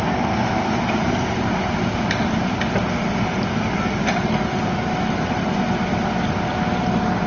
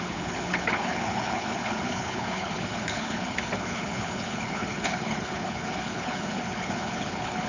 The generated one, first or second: second